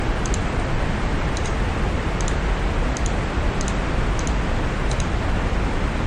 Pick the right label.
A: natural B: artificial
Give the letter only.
A